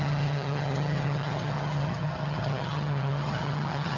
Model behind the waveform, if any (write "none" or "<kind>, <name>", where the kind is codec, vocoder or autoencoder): vocoder, HiFi-GAN